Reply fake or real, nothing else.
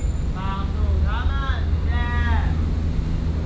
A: real